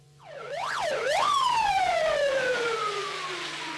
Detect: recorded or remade remade